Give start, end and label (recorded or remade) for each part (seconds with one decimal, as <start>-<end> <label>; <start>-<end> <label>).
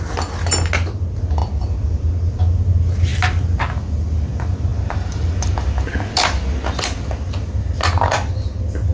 0.0-1.4 recorded; 1.4-2.4 remade; 2.4-4.7 recorded; 4.7-7.0 remade; 7.0-8.9 recorded